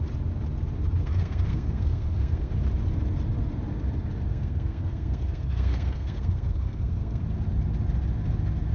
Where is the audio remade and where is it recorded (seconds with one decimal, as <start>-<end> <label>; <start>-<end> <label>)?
0.0-1.0 recorded; 1.0-2.5 remade; 2.5-4.3 recorded; 4.3-7.2 remade; 7.2-8.7 recorded